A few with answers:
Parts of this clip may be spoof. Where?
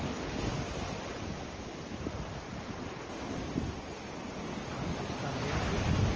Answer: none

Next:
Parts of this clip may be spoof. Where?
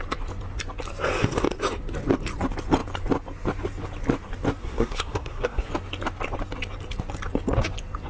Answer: 4.6-5.7 (codec, SNAC)